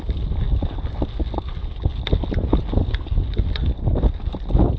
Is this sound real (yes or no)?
yes